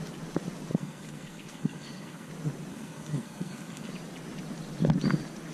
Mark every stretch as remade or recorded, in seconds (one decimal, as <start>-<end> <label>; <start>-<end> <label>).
0.0-0.7 recorded; 0.7-2.3 remade; 2.3-2.7 recorded; 2.7-3.9 remade; 3.9-5.5 recorded